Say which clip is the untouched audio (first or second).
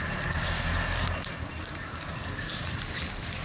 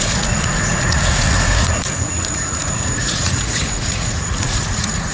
first